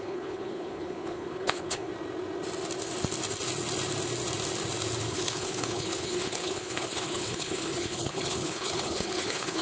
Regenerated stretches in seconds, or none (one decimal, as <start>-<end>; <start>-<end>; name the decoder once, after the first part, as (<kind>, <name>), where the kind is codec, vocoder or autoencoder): 0.0-1.9 (codec, HILCodec); 5.1-9.6